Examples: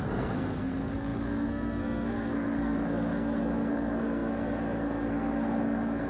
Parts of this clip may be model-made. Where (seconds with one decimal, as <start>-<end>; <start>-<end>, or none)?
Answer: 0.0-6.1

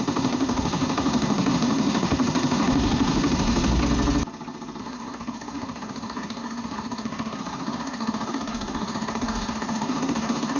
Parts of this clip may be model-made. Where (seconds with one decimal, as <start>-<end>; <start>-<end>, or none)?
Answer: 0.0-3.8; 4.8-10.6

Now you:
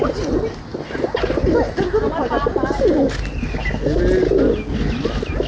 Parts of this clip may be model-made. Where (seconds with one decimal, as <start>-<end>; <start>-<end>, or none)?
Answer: none